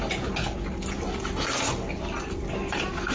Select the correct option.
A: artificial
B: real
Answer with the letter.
B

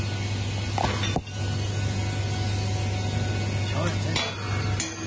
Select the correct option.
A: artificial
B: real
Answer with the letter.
B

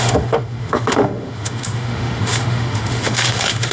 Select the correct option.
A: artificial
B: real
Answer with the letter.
A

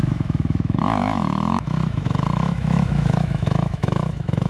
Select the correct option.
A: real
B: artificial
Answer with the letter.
B